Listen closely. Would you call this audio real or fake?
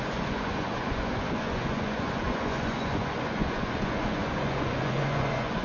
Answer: fake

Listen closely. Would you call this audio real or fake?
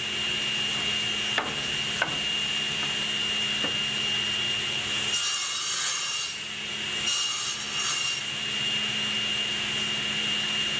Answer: real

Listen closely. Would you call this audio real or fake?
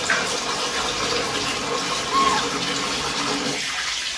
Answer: real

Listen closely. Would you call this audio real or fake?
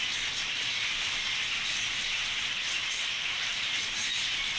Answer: real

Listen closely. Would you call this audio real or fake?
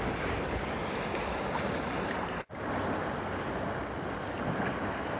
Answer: real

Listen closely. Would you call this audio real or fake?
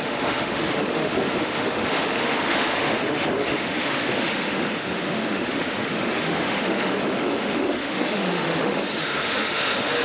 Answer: fake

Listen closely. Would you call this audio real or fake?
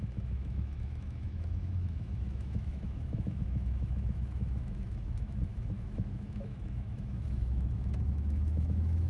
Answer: fake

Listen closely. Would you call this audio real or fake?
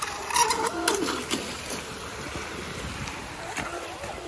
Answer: real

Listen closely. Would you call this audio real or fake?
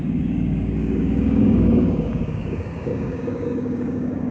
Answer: fake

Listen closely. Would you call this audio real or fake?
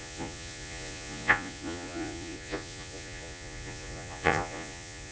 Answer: fake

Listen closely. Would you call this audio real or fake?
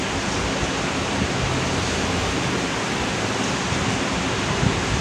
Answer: real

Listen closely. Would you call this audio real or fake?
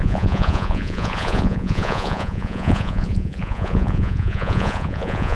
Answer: fake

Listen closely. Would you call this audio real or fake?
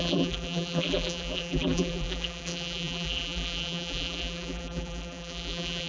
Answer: fake